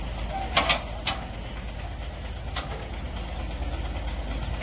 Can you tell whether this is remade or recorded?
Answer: recorded